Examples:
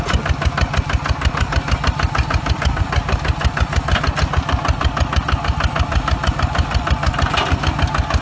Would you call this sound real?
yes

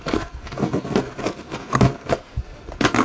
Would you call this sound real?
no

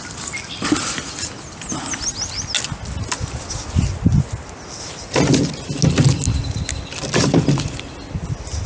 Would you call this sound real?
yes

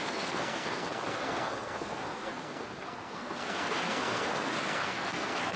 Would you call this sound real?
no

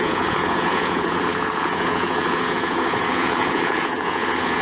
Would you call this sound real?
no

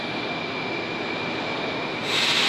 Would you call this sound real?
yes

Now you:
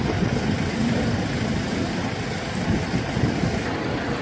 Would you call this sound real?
yes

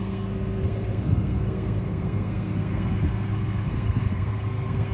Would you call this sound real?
no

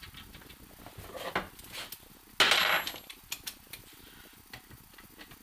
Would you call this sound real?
yes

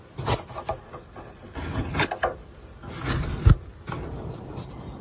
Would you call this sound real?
yes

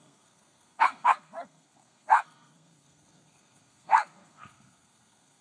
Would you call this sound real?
no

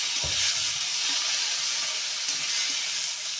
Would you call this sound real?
yes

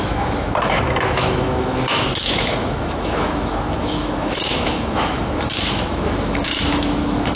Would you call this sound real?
no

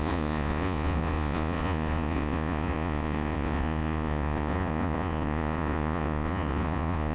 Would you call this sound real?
no